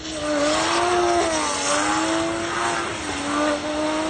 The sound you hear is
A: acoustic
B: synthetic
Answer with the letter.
A